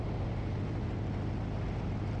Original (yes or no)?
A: yes